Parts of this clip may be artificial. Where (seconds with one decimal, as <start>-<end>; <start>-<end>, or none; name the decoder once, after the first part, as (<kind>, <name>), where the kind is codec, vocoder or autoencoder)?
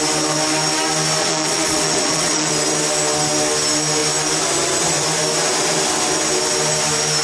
1.2-2.5 (vocoder, Vocos)